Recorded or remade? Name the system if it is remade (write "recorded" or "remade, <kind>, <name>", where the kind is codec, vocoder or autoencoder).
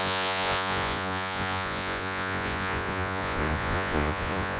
remade, vocoder, Vocos